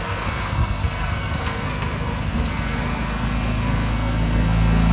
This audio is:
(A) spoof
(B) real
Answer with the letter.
A